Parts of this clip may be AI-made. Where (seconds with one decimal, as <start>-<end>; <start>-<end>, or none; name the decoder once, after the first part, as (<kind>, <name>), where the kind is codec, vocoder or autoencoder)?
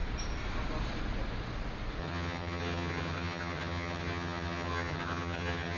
2.0-5.8 (vocoder, HiFi-GAN)